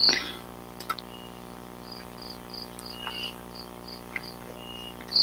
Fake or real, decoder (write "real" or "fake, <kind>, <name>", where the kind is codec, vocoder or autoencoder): real